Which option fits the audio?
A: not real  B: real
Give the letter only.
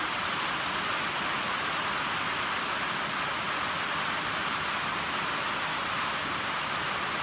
B